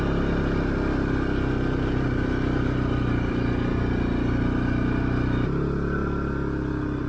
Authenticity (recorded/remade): recorded